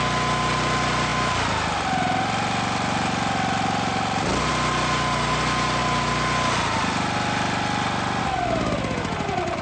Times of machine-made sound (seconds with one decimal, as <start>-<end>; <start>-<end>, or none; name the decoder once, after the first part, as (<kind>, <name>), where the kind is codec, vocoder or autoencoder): none